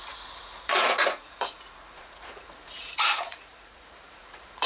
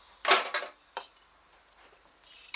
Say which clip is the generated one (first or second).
first